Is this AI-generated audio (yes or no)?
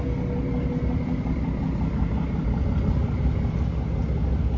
no